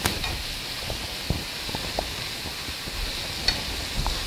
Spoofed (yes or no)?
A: no